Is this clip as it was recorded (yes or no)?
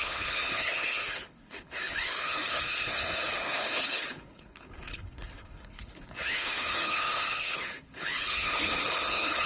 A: no